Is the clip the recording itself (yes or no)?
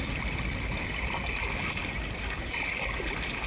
yes